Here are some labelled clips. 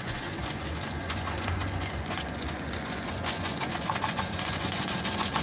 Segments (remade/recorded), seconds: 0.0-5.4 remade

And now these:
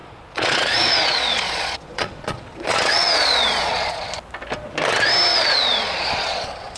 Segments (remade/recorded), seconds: 0.0-4.1 remade; 4.1-5.3 recorded; 5.3-6.8 remade

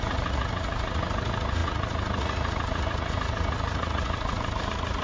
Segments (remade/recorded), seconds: 0.0-5.0 remade

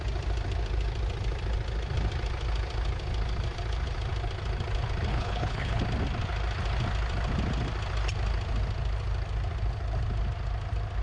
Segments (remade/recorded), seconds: 0.0-5.1 recorded; 5.1-5.8 remade; 5.8-11.0 recorded

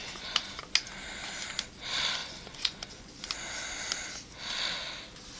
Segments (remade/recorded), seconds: 0.0-0.6 remade; 0.6-2.2 recorded; 2.2-3.3 remade; 3.3-5.4 recorded

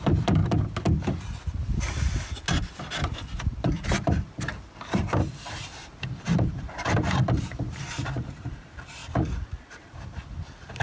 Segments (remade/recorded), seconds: 0.0-0.4 remade; 0.4-3.0 recorded; 3.0-9.0 remade; 9.0-9.6 recorded; 9.6-10.8 remade

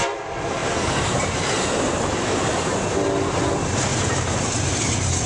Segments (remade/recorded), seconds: 0.0-3.9 remade; 3.9-5.3 recorded